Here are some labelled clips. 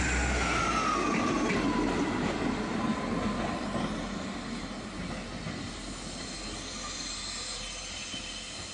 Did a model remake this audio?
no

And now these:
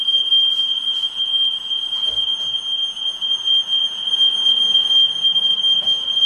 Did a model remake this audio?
no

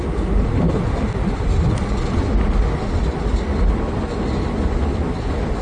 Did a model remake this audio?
no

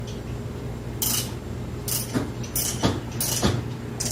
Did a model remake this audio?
no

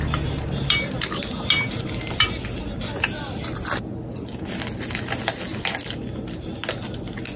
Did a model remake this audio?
no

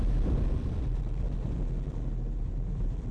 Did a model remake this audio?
no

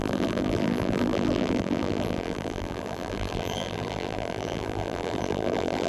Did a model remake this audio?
yes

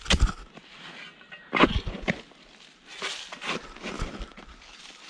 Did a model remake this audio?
no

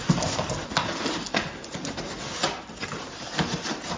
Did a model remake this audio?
no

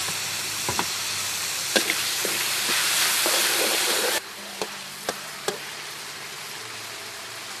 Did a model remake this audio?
yes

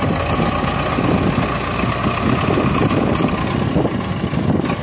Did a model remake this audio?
no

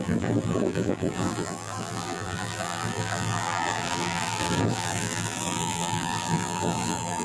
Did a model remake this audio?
yes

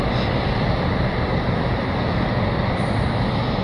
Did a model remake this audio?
no